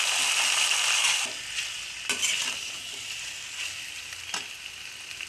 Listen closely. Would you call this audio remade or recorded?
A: recorded